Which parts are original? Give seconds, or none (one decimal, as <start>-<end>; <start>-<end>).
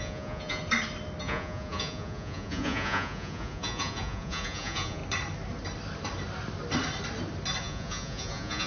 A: 0.6-1.2; 5.0-7.6